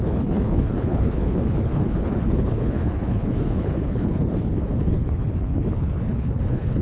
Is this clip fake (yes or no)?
yes